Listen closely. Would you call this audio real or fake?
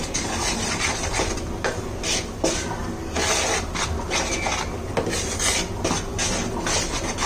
real